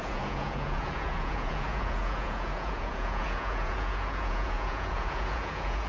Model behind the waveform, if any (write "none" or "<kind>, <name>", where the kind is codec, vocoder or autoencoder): vocoder, Vocos